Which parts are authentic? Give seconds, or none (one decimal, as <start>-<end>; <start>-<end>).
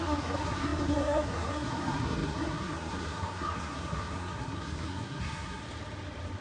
5.6-6.4